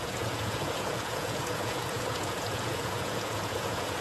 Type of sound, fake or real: fake